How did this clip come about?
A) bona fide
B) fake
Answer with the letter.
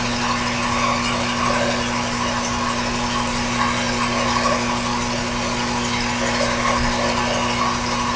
A